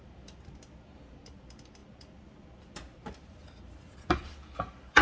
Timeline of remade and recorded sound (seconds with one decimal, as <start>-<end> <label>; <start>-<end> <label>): 0.0-5.0 recorded